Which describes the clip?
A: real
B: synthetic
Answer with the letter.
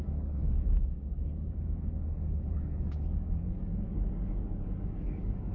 B